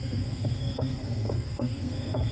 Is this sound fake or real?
fake